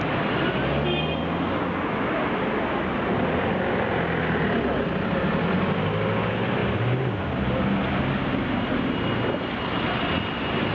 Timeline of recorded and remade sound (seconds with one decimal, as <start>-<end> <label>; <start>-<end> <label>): 0.0-10.7 recorded